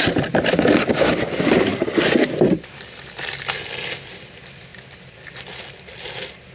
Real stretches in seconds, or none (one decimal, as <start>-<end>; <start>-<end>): 0.0-6.5

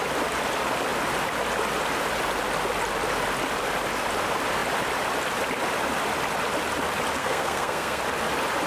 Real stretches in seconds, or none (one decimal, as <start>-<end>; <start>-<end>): 0.0-7.2; 8.0-8.7

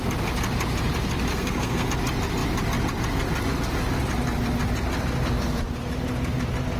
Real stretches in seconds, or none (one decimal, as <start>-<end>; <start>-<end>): 0.0-1.3; 1.9-6.8

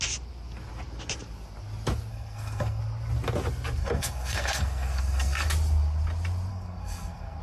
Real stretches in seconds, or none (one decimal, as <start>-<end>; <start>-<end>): 0.0-2.1; 2.8-3.8; 5.5-6.5

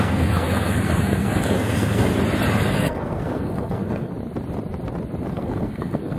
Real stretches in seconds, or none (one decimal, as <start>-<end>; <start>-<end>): 2.1-2.7; 4.1-5.3

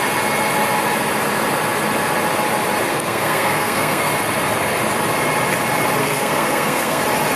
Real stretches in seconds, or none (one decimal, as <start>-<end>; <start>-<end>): 0.0-2.9; 4.1-6.0; 7.0-7.4